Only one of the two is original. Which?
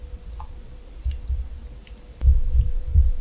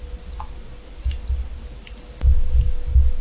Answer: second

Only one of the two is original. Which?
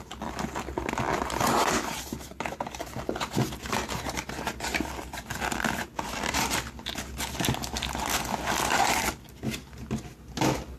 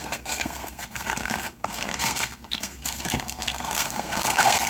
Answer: first